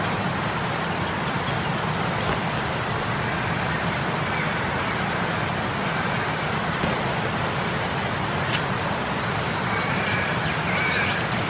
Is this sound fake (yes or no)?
no